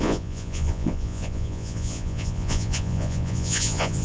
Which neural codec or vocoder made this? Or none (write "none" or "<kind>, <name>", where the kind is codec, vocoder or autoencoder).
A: vocoder, Vocos